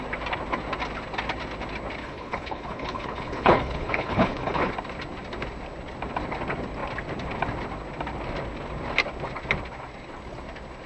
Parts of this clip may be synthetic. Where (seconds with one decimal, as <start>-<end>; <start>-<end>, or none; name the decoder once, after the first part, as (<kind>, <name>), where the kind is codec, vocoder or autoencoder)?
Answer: 2.0-4.7 (codec, HILCodec)